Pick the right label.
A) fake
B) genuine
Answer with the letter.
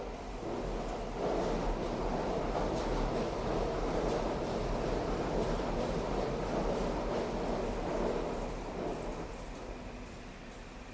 B